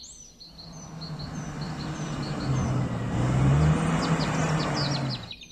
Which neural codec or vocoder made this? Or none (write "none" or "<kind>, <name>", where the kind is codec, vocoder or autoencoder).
none